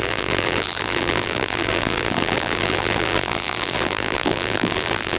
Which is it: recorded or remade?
remade